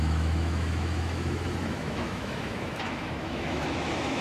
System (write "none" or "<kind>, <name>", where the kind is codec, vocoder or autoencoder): autoencoder, DAC-VAE